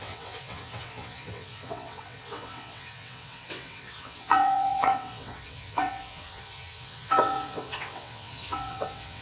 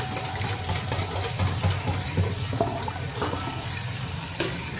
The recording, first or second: second